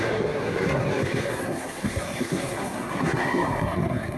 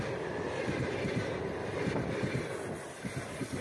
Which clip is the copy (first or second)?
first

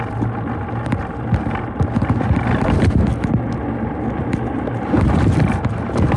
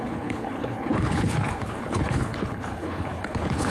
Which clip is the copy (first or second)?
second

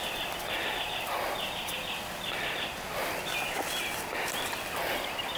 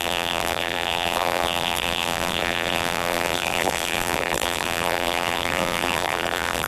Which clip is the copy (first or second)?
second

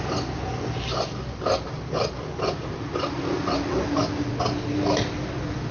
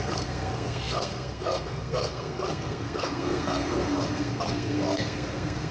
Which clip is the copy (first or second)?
second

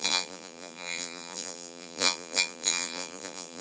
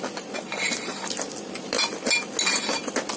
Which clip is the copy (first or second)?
first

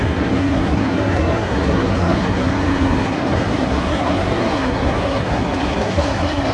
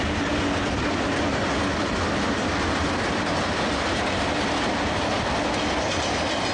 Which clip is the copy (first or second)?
first